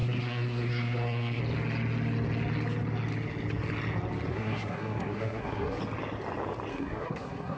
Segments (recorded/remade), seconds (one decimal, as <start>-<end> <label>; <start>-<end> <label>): 0.0-1.4 remade; 1.4-4.3 recorded; 4.3-5.8 remade; 5.8-6.7 recorded; 6.7-7.6 remade